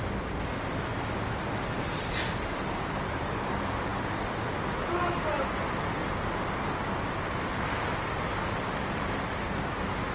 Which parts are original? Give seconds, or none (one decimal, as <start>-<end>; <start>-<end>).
0.0-10.1